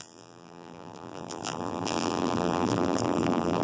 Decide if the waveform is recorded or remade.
remade